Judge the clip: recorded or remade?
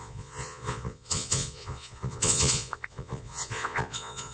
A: remade